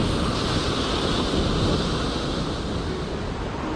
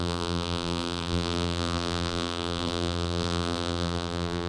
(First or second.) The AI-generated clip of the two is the second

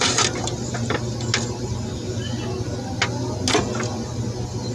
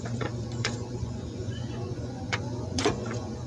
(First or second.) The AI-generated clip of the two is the second